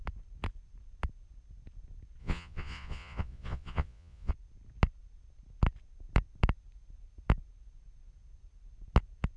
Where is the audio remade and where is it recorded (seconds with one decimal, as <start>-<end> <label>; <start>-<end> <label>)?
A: 0.0-2.2 recorded; 2.2-4.3 remade; 4.3-9.4 recorded